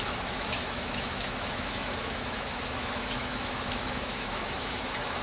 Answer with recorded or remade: remade